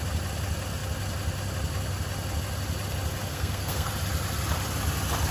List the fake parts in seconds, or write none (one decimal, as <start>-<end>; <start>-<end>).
3.3-3.9